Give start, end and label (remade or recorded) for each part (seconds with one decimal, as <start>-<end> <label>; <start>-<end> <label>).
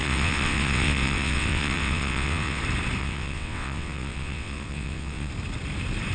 0.0-2.6 remade; 2.6-3.0 recorded; 3.0-5.3 remade; 5.3-6.1 recorded